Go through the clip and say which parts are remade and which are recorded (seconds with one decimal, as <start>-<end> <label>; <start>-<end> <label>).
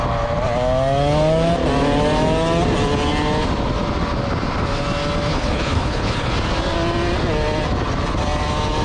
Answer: 0.0-5.3 recorded; 5.3-6.3 remade; 6.3-8.8 recorded